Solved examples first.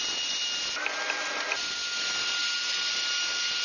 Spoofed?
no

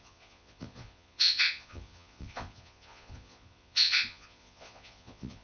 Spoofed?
yes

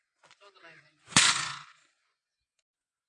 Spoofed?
yes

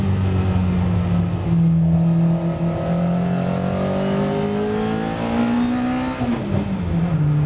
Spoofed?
no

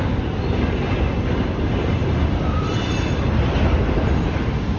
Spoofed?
no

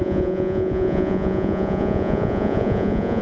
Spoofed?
yes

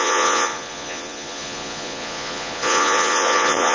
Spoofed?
yes